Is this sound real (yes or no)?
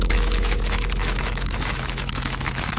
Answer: no